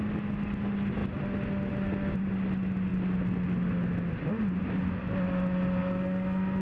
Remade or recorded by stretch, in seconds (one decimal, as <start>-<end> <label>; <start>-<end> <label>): 0.0-6.6 recorded